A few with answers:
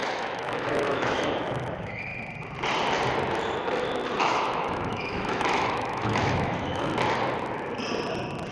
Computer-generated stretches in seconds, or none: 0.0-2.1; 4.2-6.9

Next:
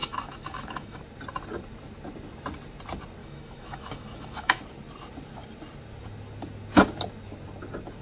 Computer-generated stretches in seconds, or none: 0.0-1.0; 3.2-4.6

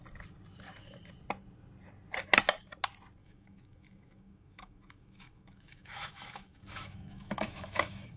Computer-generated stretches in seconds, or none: 3.2-8.2

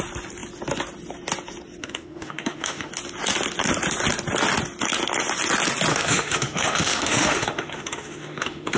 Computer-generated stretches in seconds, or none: 1.8-2.9; 5.9-8.8

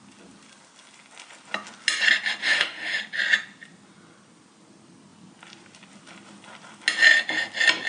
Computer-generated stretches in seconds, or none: 2.4-3.0